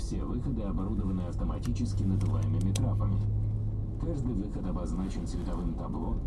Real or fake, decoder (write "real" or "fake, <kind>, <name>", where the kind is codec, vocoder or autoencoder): real